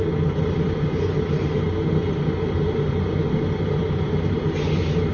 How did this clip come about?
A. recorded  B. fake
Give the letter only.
A